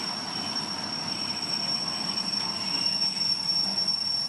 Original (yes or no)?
yes